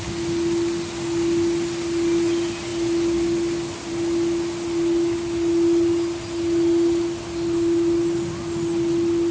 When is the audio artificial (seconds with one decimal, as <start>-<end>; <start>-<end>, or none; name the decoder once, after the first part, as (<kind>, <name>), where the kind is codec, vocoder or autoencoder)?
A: none